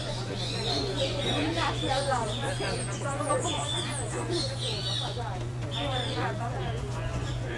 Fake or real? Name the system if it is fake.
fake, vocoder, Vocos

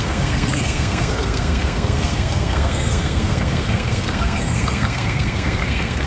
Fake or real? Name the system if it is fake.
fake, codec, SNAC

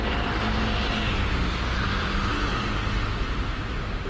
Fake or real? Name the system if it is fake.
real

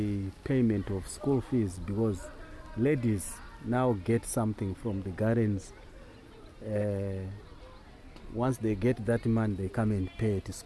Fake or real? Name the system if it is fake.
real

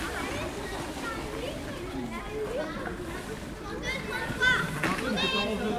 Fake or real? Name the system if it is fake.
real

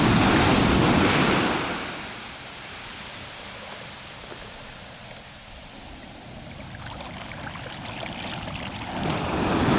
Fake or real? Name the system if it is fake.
real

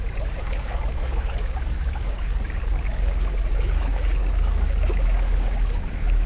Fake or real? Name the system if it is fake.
fake, codec, DAC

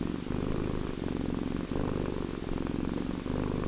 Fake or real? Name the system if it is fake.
real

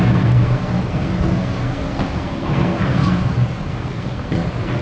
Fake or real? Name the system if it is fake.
fake, codec, SNAC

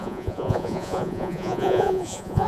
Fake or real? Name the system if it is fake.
fake, vocoder, Vocos